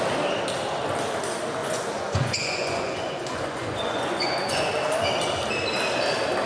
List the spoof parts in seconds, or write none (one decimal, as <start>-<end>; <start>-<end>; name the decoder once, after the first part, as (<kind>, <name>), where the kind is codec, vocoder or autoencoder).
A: 1.6-4.7 (vocoder, Vocos)